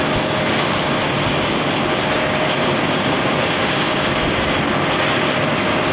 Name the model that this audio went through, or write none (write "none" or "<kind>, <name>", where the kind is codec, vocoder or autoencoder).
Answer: none